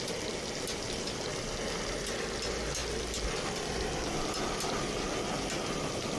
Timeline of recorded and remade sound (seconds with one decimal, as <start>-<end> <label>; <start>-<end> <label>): 0.0-6.2 recorded